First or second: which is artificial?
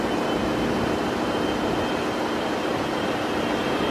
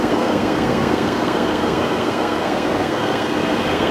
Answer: second